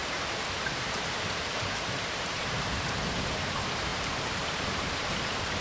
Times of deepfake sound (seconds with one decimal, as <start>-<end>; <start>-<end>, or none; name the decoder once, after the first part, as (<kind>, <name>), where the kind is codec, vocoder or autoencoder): 0.0-5.6 (vocoder, BigVGAN v2)